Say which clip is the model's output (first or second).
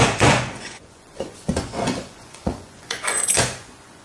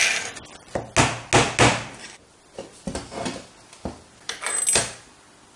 first